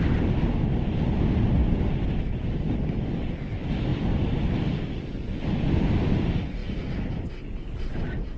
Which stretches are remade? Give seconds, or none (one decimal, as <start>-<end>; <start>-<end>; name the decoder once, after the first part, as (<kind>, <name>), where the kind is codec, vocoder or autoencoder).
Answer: 1.6-2.6 (vocoder, BigVGAN v2); 3.9-4.7